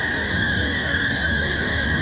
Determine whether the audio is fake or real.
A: fake